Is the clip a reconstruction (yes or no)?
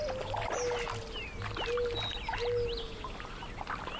no